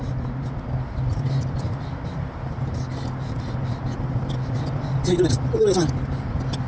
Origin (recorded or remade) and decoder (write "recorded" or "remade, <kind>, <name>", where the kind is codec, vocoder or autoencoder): recorded